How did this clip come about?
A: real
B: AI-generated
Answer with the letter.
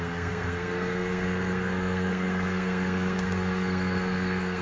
B